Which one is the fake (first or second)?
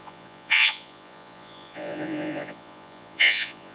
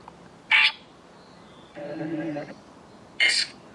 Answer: first